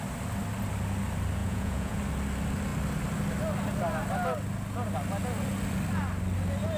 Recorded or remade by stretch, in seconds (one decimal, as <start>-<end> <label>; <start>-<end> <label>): 0.0-1.4 recorded; 1.4-2.0 remade; 2.0-6.8 recorded